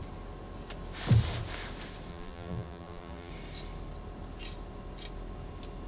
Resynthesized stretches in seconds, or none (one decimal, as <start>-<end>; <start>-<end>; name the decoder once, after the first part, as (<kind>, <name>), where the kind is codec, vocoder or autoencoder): 2.1-3.3 (vocoder, BigVGAN v2)